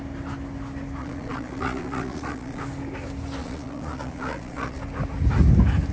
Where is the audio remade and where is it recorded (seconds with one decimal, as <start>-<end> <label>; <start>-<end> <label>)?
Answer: 0.0-1.0 recorded; 1.0-2.6 remade; 2.6-3.4 recorded; 3.4-4.8 remade; 4.8-5.9 recorded